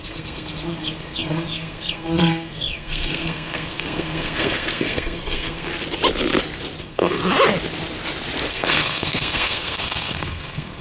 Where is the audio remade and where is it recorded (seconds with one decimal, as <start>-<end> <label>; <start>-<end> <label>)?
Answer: 0.0-5.7 remade; 5.7-6.8 recorded; 6.8-7.2 remade; 7.2-8.5 recorded; 8.5-10.8 remade